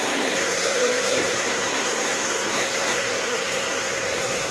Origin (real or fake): fake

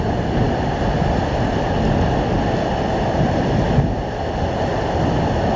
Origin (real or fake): real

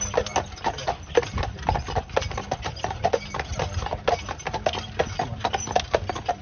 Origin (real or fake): real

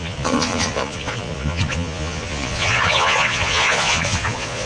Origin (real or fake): fake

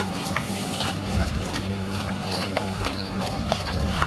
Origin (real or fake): fake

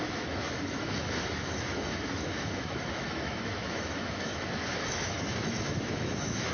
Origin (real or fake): fake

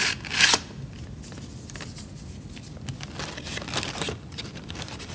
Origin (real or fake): real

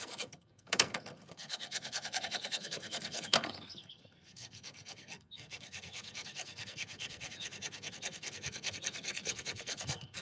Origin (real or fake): fake